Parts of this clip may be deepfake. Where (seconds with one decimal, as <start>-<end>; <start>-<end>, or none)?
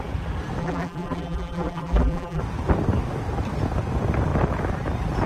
0.6-2.4